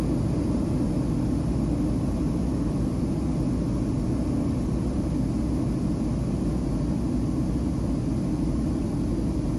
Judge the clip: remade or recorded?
recorded